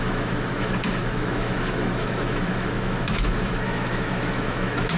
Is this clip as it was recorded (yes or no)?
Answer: no